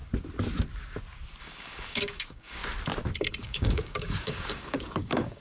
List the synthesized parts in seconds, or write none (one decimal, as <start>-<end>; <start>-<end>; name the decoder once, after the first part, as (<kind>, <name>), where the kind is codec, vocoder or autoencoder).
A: 1.4-2.6 (codec, DAC); 3.3-5.4